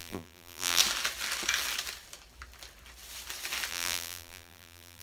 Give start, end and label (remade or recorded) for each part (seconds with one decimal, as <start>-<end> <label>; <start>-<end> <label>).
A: 0.0-0.8 remade; 0.8-3.7 recorded; 3.7-5.0 remade